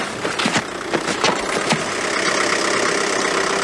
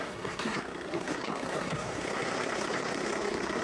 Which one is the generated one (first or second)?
second